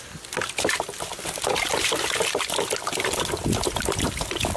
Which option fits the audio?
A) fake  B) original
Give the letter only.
B